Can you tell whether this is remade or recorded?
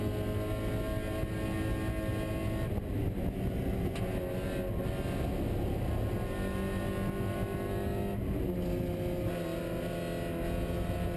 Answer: recorded